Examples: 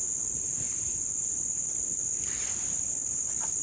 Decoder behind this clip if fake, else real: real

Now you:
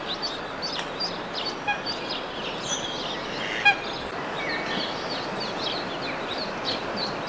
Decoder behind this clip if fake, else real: real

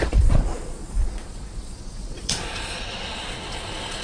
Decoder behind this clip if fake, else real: fake, vocoder, Vocos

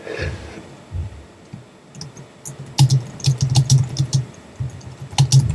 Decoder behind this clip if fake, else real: real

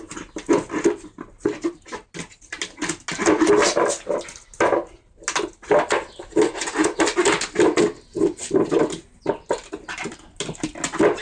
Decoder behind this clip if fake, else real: real